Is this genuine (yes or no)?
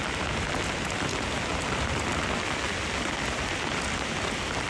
yes